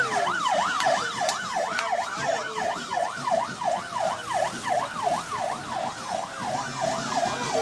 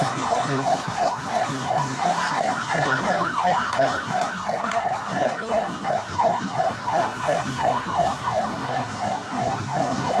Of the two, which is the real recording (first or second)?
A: first